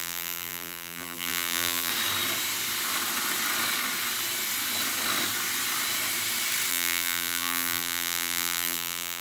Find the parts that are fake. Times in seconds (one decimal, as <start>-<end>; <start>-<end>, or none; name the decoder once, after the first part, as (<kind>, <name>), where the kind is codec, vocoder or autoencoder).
0.0-1.9 (vocoder, BigVGAN v2); 6.7-9.2